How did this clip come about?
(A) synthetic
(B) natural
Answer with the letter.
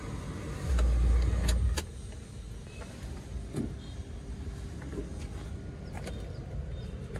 B